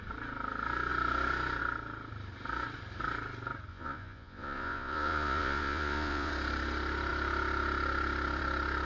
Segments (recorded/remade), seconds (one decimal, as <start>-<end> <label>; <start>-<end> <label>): 0.0-3.7 recorded; 3.7-6.3 remade; 6.3-8.8 recorded